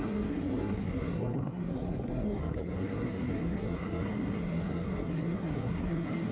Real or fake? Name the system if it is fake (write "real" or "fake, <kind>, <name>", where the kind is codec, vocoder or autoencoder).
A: fake, codec, SNAC